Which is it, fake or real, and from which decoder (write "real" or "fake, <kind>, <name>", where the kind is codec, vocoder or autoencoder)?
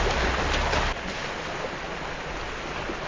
real